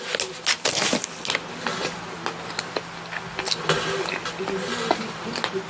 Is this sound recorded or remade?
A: recorded